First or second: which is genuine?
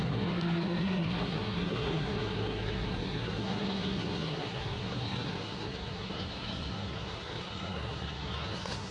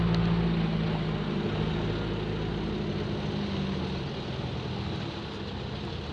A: second